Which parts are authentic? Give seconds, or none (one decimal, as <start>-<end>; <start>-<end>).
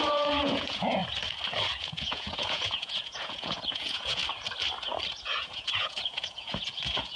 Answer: 1.0-1.8; 4.2-5.1; 6.5-7.2